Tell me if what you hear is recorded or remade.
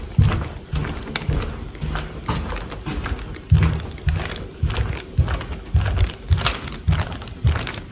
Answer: recorded